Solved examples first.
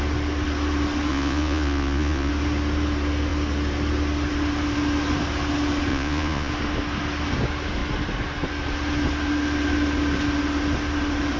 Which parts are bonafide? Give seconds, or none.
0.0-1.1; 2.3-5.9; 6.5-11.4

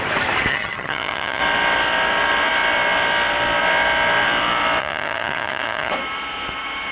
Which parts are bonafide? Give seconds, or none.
0.0-0.5; 1.4-4.8; 5.9-6.9

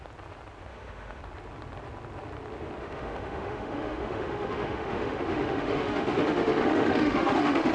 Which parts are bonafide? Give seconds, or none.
0.0-0.7; 1.2-2.8

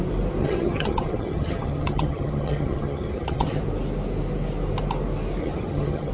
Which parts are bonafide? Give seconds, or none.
0.0-0.4; 3.6-5.4

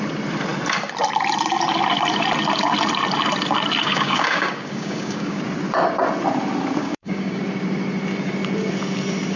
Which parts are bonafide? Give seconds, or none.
0.0-3.8; 5.4-6.8; 7.4-9.4

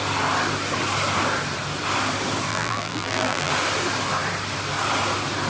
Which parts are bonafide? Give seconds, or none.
0.0-2.5; 3.5-5.5